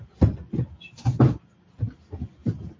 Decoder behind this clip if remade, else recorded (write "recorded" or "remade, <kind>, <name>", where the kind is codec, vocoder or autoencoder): recorded